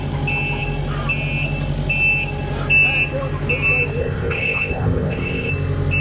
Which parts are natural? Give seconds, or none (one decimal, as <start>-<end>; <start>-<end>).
0.0-4.0; 5.5-6.0